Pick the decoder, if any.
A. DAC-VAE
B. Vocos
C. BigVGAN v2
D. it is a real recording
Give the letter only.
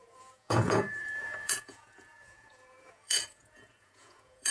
B